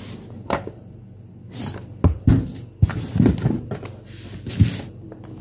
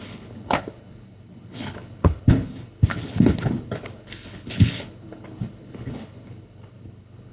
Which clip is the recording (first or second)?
first